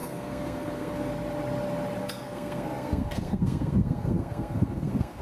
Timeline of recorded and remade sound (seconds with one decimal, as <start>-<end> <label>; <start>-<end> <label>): 0.0-1.1 remade; 1.1-2.0 recorded; 2.0-5.2 remade